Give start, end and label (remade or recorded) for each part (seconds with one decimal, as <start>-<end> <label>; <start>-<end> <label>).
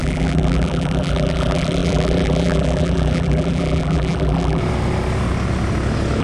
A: 0.0-4.6 remade; 4.6-6.2 recorded